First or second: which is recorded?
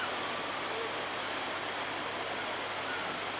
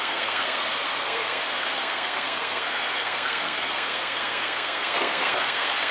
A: first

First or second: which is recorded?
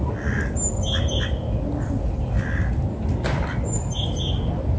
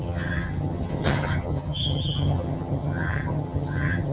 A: first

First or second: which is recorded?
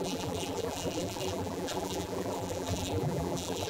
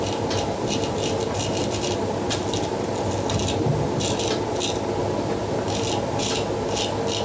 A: second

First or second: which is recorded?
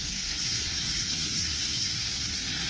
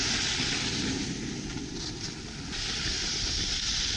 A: second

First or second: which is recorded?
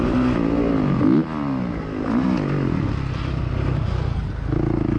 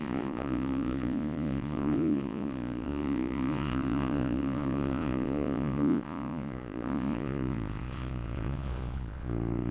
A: first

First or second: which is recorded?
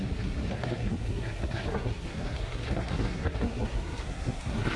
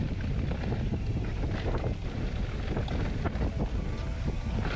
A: second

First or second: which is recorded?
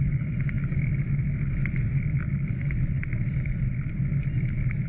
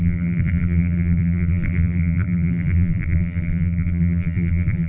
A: first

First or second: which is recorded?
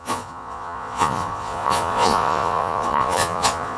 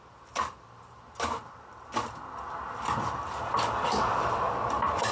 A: second